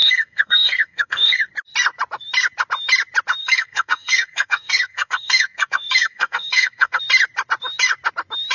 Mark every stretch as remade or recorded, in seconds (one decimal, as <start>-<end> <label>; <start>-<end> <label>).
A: 0.0-1.5 remade; 1.5-3.4 recorded; 3.4-7.0 remade; 7.0-8.5 recorded